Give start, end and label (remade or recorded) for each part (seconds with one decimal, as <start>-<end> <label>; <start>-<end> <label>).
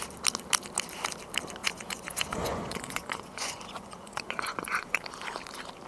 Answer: 0.0-1.6 recorded; 1.6-5.0 remade; 5.0-5.9 recorded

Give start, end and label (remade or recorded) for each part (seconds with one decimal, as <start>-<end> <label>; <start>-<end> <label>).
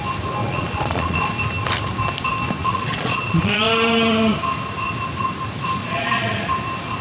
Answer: 0.0-0.4 recorded; 0.4-1.3 remade; 1.3-2.6 recorded; 2.6-3.6 remade; 3.6-5.8 recorded; 5.8-6.5 remade; 6.5-7.0 recorded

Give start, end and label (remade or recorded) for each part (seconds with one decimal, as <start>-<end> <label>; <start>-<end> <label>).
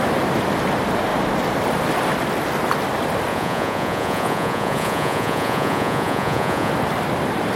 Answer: 0.0-3.3 recorded; 3.3-6.7 remade; 6.7-7.6 recorded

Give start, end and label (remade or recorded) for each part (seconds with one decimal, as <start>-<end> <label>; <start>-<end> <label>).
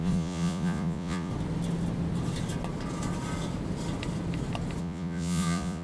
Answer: 0.0-1.3 remade; 1.3-4.8 recorded; 4.8-5.8 remade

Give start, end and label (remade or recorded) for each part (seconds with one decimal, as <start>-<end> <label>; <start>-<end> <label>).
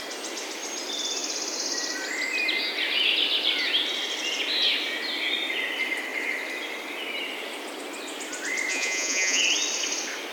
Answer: 0.0-8.7 recorded; 8.7-9.4 remade; 9.4-10.3 recorded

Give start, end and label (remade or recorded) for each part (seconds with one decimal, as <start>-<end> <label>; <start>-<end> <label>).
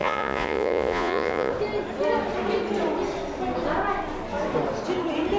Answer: 0.0-1.5 remade; 1.5-5.4 recorded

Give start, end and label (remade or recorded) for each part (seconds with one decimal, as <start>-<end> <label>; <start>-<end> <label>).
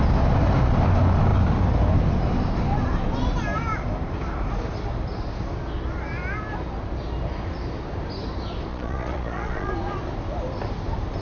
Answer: 0.0-8.7 recorded; 8.7-9.7 remade; 9.7-11.2 recorded